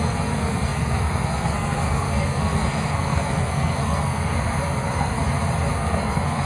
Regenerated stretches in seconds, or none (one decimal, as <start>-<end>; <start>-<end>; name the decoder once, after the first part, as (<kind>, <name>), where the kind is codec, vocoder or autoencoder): 0.0-5.2 (codec, SNAC); 5.7-6.5